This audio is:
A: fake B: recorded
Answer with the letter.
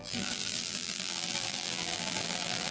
A